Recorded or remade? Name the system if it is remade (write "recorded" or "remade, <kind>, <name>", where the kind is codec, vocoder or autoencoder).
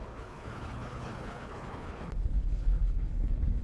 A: remade, codec, HILCodec